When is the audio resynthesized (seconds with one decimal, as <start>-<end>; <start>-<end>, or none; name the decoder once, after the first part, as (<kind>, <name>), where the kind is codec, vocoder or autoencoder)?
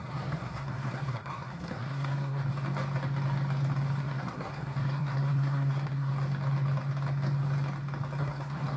0.0-2.4 (codec, SNAC); 4.0-6.1; 8.2-8.8